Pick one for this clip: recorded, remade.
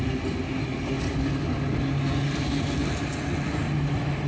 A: recorded